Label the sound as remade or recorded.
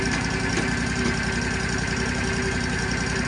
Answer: recorded